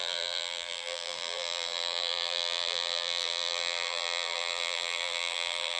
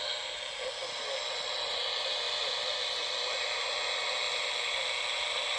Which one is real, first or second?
second